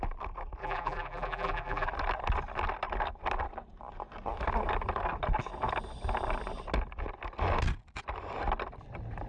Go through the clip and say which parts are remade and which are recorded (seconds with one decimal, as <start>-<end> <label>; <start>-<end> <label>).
0.0-0.6 recorded; 0.6-1.9 remade; 1.9-9.3 recorded